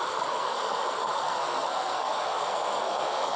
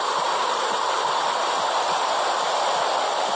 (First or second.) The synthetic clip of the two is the first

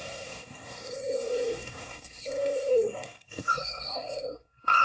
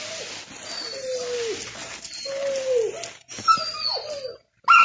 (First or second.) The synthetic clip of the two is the first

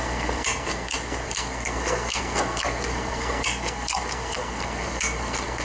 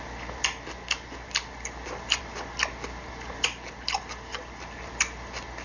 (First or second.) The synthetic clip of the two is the first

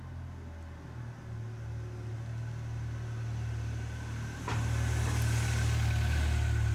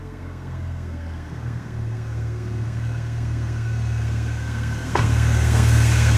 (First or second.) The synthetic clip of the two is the second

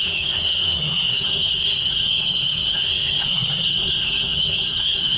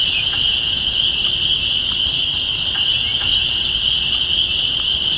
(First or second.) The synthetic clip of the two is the first